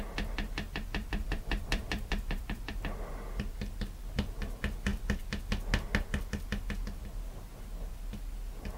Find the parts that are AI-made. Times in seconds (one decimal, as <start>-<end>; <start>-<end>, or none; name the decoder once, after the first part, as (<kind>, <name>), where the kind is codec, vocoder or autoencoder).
1.2-2.7 (vocoder, BigVGAN v2)